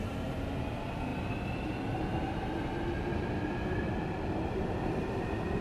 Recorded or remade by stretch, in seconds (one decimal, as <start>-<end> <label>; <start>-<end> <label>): 0.0-5.6 recorded